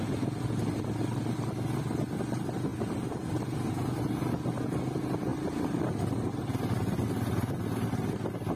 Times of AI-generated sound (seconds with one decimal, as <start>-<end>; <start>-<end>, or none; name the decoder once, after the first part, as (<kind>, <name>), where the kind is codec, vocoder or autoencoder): none